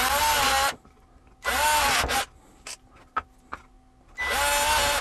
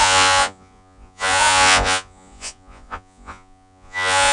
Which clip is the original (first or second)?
first